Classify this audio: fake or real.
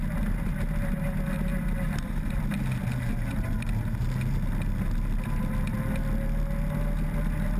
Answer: real